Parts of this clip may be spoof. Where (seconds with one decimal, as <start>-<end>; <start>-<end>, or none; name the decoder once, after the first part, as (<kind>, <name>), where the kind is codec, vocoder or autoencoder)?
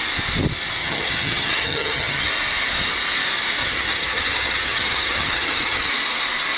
0.8-2.3 (vocoder, HiFi-GAN); 3.6-5.9